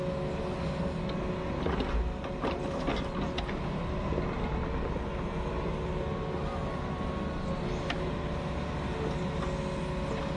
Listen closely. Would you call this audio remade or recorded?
recorded